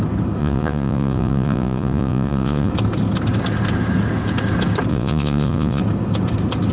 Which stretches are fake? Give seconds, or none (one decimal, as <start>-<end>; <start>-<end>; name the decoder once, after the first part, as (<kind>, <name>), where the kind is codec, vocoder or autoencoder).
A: 0.4-2.7 (vocoder, Vocos); 4.9-5.8